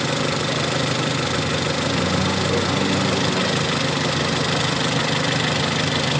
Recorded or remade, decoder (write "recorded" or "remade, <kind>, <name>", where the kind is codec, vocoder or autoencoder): recorded